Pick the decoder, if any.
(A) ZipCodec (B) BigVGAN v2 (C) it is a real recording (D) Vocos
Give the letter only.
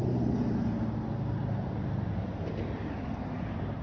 C